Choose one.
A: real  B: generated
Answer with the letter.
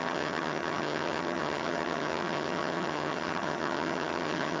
B